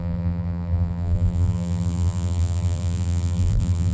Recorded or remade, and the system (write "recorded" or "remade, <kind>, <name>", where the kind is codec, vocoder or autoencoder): remade, vocoder, BigVGAN v2